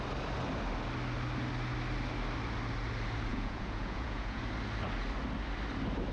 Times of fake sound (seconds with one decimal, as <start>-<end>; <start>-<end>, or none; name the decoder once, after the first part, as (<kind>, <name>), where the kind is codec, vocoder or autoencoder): 3.3-4.4 (vocoder, Vocos)